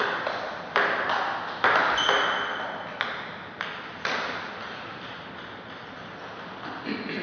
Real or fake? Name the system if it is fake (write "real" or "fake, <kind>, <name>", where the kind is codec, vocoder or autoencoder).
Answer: real